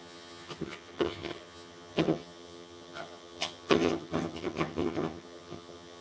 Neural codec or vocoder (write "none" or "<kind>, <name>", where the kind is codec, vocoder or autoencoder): vocoder, HiFi-GAN